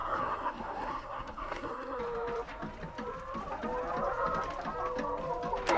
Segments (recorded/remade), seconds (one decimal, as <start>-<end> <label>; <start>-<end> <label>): 0.0-2.0 remade; 2.0-5.8 recorded